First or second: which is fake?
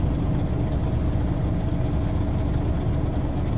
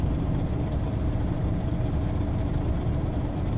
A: second